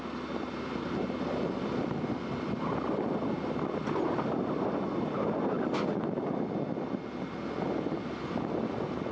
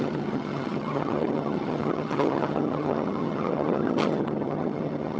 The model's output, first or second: second